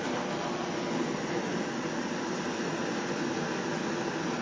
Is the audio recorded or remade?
recorded